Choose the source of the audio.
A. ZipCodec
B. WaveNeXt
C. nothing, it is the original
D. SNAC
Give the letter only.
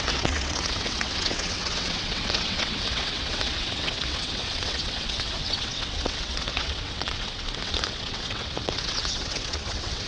B